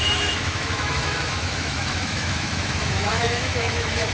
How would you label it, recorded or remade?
remade